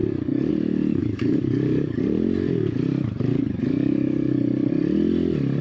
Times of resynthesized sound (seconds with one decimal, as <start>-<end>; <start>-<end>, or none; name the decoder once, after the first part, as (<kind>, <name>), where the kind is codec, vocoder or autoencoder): 0.0-0.5 (codec, DAC); 1.0-2.0; 3.3-4.7